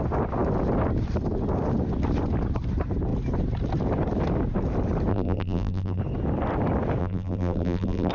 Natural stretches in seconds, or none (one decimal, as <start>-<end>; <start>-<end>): 0.0-5.1; 6.0-7.0